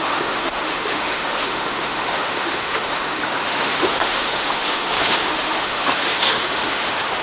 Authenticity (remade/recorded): remade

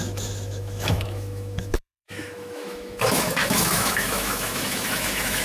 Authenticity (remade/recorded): remade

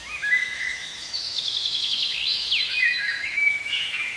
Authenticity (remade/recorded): remade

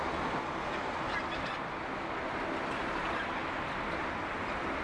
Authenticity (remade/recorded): recorded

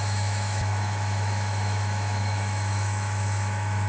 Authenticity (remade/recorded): remade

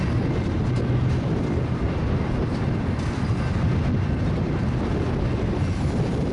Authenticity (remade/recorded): recorded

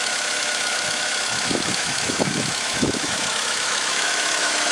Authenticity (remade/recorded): remade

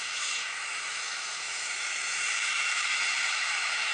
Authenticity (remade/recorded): remade